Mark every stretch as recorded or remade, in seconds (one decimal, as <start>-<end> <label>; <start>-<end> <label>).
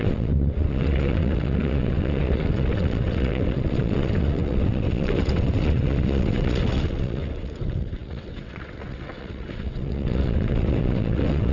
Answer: 0.0-11.5 remade